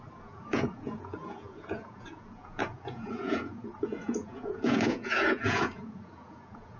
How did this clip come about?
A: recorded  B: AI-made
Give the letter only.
B